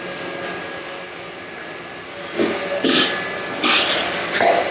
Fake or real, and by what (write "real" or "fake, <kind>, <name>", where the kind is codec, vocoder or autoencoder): real